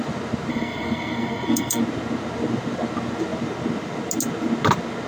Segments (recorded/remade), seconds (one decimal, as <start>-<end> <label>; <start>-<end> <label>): 0.0-0.5 recorded; 0.5-1.8 remade; 1.8-5.1 recorded